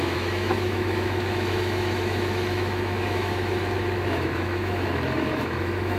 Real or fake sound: fake